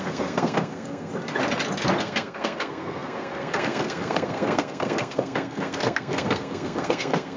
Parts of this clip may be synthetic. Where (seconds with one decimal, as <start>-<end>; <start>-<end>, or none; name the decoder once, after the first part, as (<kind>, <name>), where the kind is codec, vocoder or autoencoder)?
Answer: 0.0-1.1 (codec, SNAC); 2.0-7.4